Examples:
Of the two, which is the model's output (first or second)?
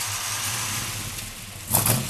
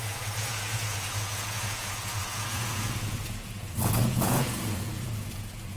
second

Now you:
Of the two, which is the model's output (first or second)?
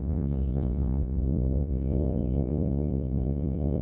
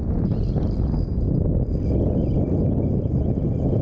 first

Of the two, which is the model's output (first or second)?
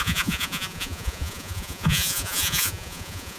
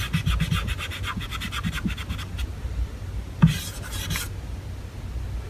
first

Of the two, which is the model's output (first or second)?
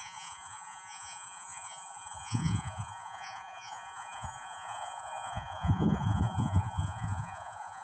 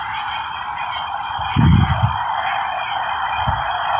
first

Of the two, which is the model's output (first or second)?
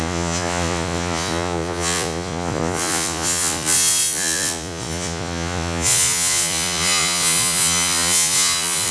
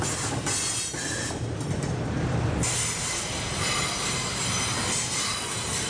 first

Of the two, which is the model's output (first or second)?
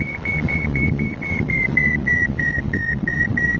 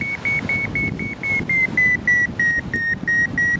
first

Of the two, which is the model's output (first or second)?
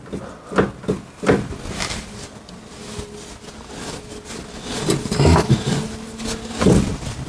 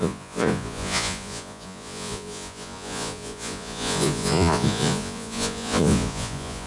second